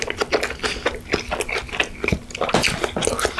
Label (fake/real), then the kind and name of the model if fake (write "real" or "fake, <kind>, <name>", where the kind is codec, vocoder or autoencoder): real